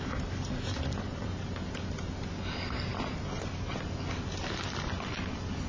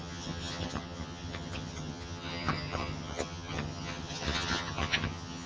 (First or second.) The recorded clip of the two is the first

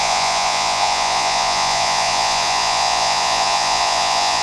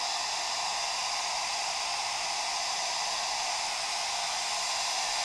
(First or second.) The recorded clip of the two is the second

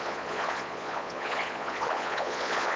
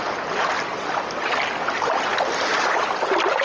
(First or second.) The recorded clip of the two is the second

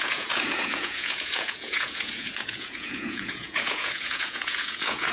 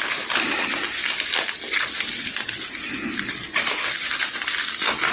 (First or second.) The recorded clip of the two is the second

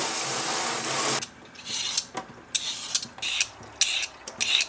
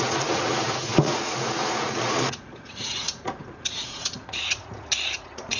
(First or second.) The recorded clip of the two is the first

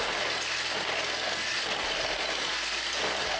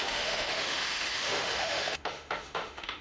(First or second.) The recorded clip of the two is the first